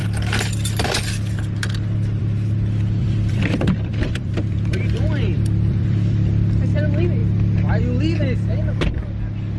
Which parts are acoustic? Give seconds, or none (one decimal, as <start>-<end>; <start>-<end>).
0.0-3.0; 6.8-9.6